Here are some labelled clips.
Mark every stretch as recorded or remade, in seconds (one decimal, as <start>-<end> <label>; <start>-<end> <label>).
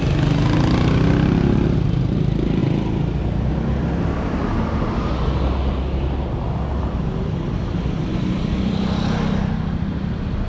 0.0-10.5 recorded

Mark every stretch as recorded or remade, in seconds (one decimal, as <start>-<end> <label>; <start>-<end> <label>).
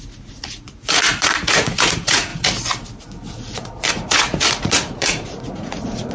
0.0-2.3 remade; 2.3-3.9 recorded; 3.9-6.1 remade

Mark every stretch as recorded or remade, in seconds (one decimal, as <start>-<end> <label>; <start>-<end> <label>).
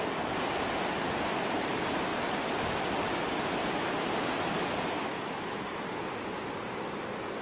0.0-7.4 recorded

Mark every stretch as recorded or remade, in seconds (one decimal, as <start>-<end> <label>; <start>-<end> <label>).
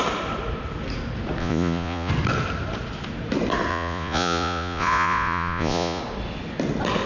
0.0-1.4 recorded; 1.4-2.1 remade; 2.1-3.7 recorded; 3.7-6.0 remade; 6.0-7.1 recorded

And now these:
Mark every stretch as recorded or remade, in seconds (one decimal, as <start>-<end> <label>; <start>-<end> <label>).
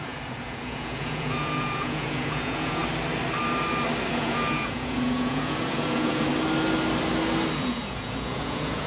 0.0-2.8 remade; 2.8-4.1 recorded; 4.1-6.3 remade; 6.3-7.6 recorded; 7.6-8.9 remade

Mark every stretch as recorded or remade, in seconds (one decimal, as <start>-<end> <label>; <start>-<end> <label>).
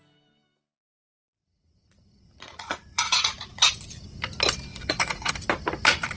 0.0-1.5 recorded; 1.5-3.7 remade; 3.7-4.7 recorded; 4.7-5.3 remade; 5.3-6.2 recorded